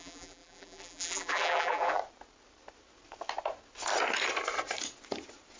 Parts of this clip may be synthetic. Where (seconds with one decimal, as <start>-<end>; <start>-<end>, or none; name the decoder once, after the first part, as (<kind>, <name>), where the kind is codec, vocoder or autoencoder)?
0.0-2.0 (vocoder, BigVGAN v2)